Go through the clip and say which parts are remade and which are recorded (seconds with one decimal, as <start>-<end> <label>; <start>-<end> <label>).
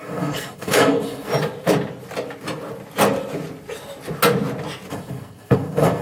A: 0.0-1.3 remade; 1.3-4.9 recorded; 4.9-6.0 remade